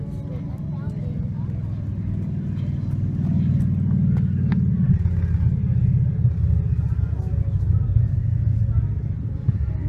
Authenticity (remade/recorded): recorded